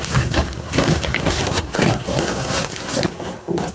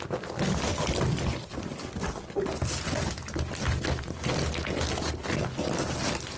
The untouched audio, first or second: second